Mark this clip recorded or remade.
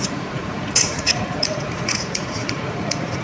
remade